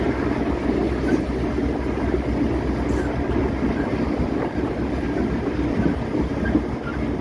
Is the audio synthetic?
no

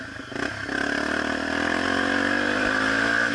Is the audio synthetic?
no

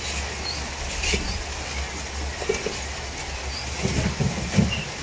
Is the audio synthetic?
no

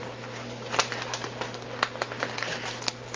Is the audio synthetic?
no